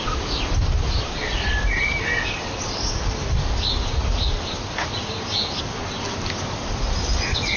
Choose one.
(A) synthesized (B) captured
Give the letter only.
B